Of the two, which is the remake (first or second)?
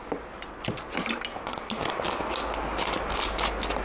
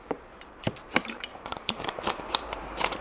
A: second